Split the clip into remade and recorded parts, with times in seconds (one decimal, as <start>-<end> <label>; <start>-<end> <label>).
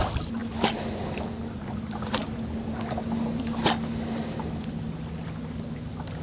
0.0-6.2 recorded